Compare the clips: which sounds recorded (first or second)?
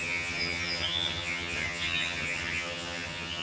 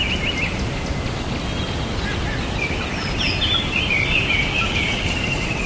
second